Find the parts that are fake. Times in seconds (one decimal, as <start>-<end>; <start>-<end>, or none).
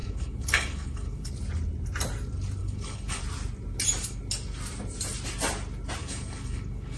0.0-1.3; 2.6-3.2; 6.0-7.0